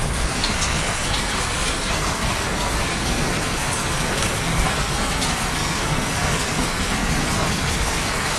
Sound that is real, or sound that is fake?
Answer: fake